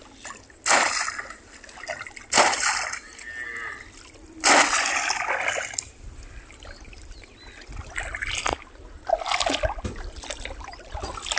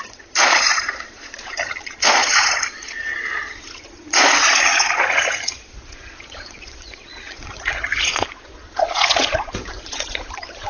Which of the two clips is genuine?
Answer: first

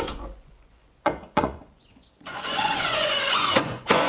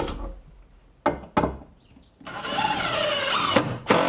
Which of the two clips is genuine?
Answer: second